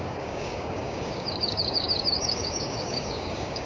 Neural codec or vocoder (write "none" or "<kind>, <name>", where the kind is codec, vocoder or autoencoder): codec, DAC